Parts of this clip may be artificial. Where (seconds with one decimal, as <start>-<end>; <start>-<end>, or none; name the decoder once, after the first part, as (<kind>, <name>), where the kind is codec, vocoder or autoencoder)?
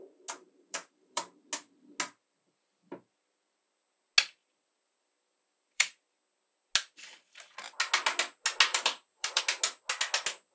0.4-1.2 (vocoder, BigVGAN v2); 4.4-6.2; 8.7-9.4